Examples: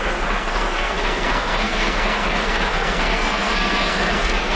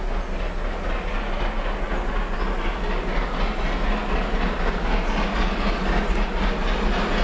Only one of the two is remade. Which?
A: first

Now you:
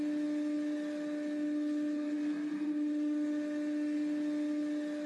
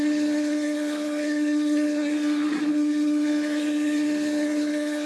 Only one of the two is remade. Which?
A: second